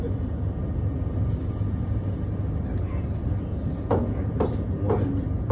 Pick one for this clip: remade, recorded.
recorded